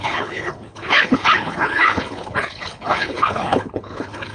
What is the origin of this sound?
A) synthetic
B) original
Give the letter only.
A